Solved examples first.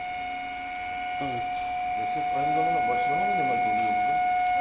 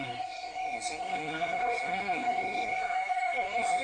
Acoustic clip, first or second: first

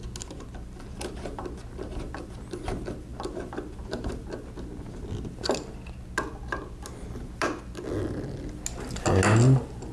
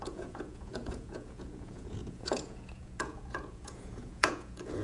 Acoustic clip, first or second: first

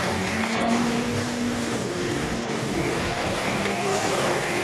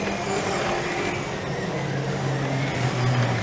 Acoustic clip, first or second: second